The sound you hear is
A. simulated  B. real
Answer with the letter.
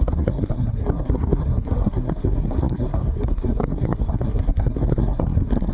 A